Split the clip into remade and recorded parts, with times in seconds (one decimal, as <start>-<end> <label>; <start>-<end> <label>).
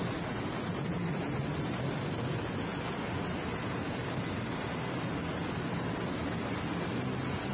0.0-7.5 recorded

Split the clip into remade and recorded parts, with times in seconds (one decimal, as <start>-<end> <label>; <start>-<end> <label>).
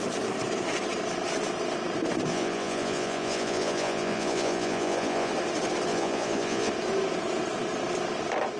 0.0-2.3 recorded; 2.3-5.3 remade; 5.3-5.9 recorded; 5.9-6.7 remade; 6.7-8.6 recorded